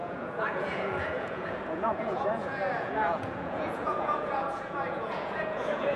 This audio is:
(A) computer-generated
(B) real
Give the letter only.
A